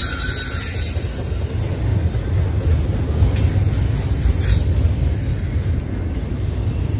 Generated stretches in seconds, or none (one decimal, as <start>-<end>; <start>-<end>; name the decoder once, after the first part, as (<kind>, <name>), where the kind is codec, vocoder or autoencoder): 1.4-1.9 (vocoder, BigVGAN v2); 3.8-7.0